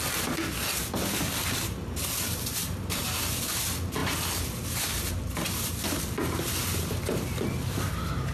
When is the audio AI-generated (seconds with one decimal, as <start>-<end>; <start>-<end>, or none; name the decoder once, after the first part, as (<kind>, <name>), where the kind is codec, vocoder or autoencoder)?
2.6-3.4 (vocoder, BigVGAN v2)